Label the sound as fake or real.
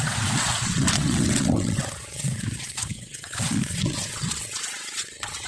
fake